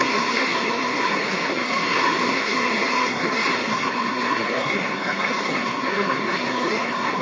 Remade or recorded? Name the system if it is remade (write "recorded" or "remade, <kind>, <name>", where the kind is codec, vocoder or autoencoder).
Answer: remade, codec, SNAC